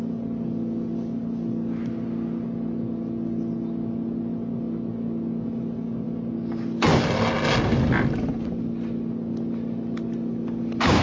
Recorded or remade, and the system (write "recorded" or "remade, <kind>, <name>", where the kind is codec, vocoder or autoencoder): recorded